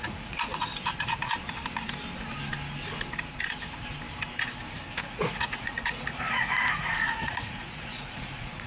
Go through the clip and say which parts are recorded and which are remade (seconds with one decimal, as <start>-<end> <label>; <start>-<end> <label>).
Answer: 0.0-0.7 remade; 0.7-4.9 recorded; 4.9-8.7 remade